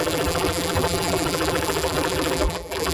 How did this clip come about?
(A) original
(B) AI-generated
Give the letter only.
B